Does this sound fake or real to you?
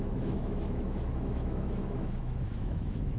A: fake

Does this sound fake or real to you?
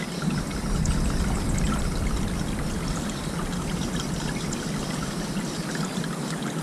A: real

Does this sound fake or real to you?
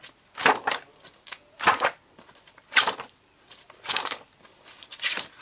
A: real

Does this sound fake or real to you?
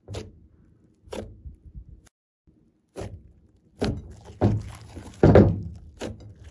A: real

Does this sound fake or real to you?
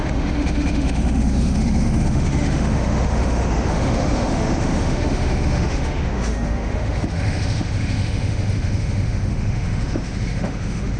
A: fake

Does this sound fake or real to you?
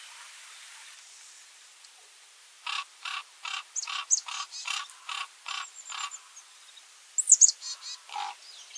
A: real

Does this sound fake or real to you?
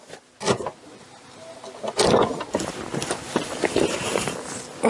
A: real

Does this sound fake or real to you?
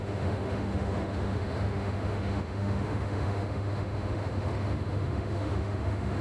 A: fake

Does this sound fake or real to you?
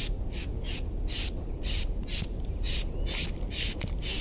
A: real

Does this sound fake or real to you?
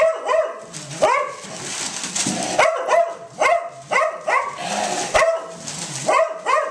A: real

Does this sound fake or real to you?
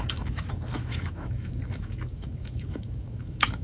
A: fake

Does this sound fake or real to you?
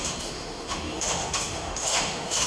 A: fake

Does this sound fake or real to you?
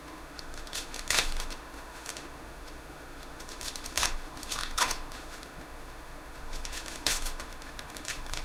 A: fake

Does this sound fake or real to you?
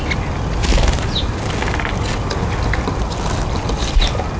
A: real